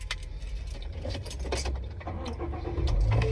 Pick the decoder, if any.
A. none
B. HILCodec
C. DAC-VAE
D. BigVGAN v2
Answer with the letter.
A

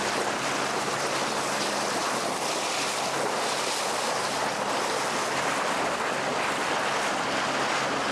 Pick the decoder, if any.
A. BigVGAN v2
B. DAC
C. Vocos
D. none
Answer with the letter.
D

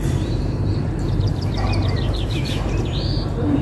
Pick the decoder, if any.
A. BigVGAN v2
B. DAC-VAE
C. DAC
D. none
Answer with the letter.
A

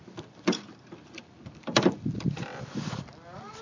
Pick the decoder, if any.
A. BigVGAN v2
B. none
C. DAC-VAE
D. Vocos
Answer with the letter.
A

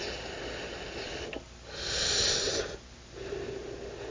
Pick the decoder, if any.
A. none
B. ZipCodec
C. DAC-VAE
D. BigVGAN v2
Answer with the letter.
A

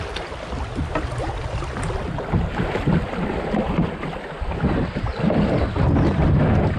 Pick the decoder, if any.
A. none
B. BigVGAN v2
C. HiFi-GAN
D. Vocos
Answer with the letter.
A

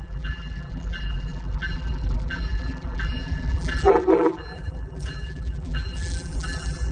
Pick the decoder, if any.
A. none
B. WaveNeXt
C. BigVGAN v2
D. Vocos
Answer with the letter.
C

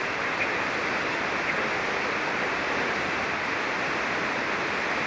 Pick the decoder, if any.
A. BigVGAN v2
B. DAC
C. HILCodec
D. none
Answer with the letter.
D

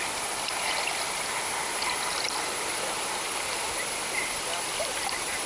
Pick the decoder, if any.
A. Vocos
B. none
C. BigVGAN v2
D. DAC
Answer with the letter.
C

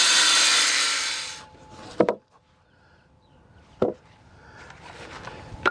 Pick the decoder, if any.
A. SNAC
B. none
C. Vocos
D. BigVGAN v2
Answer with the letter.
D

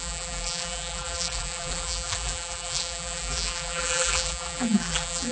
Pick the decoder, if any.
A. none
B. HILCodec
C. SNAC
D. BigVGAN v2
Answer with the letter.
D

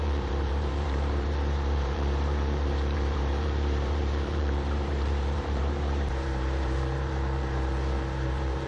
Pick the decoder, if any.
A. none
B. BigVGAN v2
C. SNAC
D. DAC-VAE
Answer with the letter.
B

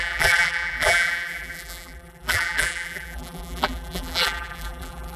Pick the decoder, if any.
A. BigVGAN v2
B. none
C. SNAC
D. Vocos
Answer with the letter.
A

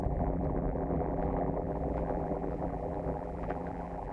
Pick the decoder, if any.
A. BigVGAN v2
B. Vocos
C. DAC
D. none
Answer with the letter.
A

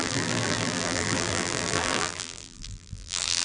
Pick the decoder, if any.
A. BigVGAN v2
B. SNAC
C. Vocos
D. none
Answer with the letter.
A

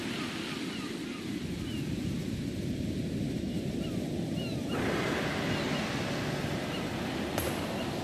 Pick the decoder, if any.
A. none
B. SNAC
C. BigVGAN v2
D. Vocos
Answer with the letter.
A